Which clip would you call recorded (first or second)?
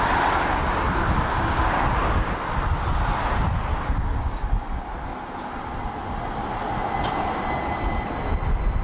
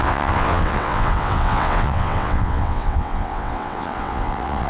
first